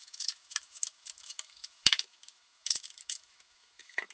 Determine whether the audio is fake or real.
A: fake